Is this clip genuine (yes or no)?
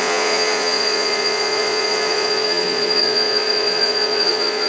no